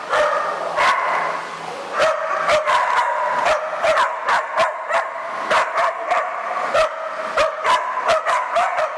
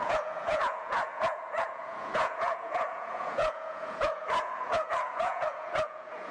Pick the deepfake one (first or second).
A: second